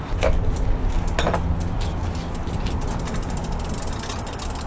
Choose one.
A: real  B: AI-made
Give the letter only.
A